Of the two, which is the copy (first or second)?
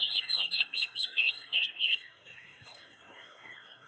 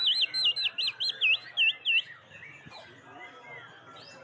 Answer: first